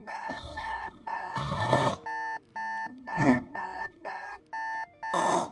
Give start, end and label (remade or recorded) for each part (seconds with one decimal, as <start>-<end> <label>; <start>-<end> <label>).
0.0-1.9 remade; 1.9-2.9 recorded; 2.9-4.4 remade; 4.4-5.5 recorded